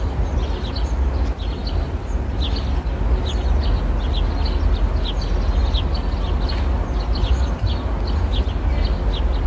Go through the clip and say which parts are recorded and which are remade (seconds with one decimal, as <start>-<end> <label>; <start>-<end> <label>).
0.0-9.5 recorded